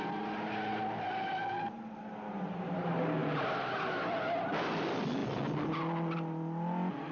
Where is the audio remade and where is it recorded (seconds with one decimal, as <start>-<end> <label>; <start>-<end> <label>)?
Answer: 0.0-7.1 recorded